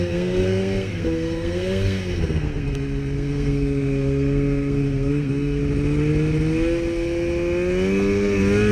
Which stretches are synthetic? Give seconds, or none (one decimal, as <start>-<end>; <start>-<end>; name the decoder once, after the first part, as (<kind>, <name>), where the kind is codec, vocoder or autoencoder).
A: 0.0-5.6 (codec, SNAC)